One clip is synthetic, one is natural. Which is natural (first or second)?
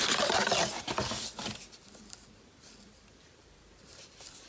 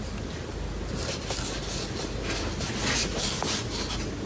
second